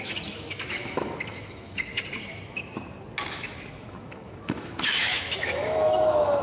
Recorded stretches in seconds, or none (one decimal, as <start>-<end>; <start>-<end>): 1.9-3.3